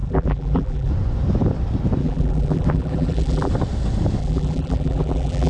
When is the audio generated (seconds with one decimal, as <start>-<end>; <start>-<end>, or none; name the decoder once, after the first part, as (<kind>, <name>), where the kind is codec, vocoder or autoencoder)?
0.0-0.9 (vocoder, BigVGAN v2); 2.0-3.5; 4.2-5.5